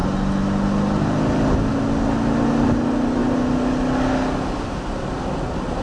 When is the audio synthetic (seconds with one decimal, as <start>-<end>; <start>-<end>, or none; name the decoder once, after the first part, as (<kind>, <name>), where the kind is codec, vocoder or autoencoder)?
none